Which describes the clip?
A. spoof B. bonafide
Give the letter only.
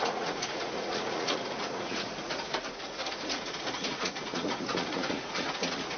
A